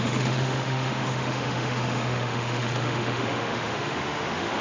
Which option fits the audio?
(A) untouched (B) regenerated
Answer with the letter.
B